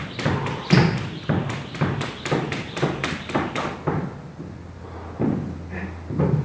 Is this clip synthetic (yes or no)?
no